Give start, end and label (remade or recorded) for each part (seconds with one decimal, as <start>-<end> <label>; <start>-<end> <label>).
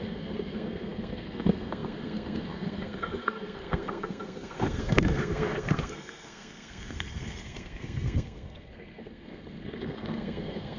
0.0-10.8 remade